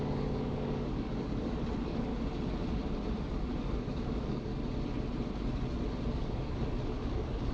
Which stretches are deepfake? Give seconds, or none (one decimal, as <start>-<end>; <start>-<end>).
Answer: 0.0-2.1; 3.3-4.5; 6.1-7.5